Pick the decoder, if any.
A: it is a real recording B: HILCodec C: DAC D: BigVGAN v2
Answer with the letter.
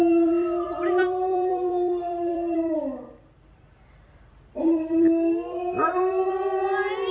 D